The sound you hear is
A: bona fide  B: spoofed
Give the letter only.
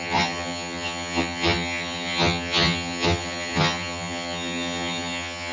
B